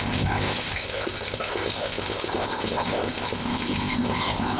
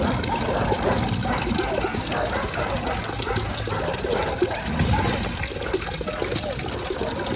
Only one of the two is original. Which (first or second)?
second